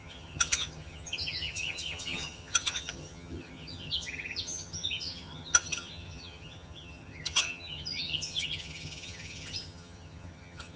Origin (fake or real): fake